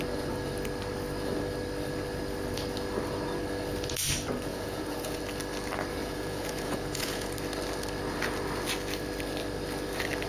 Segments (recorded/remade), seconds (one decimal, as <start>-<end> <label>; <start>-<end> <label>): 0.0-4.5 recorded; 4.5-5.2 remade; 5.2-6.0 recorded; 6.0-7.3 remade; 7.3-10.3 recorded